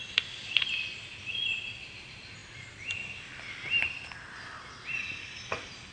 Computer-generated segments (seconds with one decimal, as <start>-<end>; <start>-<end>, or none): 2.4-5.9